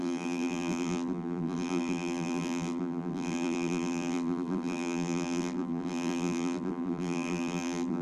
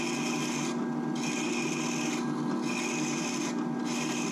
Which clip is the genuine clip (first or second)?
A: second